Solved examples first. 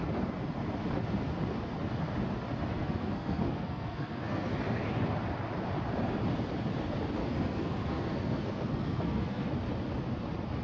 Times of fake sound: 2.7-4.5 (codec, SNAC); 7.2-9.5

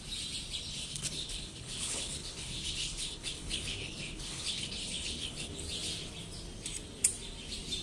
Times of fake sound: 0.8-5.5 (codec, HILCodec)

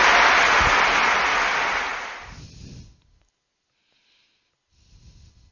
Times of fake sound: none